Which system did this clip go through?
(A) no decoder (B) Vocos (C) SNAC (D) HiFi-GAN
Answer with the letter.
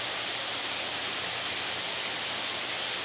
A